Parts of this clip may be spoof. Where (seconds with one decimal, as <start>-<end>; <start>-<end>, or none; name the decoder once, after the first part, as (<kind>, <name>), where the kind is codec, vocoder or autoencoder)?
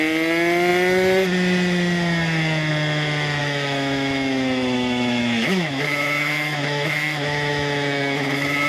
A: 3.4-8.7 (autoencoder, DAC-VAE)